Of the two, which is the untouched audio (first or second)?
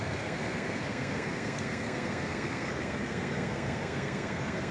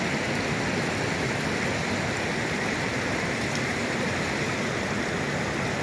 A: second